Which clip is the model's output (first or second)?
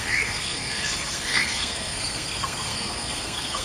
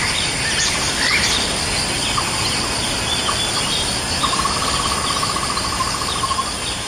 first